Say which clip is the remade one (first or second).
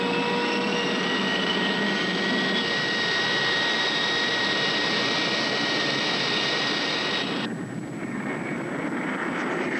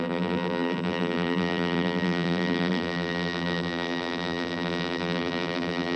second